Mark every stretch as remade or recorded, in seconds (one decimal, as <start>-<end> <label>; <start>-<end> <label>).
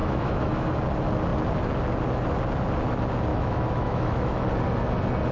0.0-0.7 remade; 0.7-3.3 recorded; 3.3-4.4 remade; 4.4-5.3 recorded